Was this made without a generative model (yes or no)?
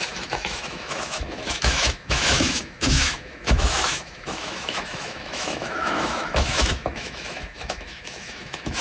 no